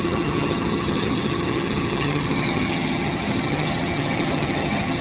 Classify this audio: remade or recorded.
remade